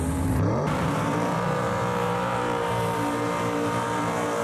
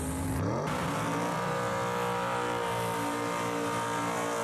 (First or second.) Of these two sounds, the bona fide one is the second